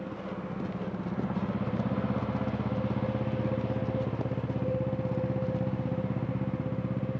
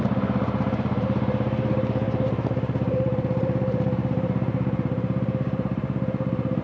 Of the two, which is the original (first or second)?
first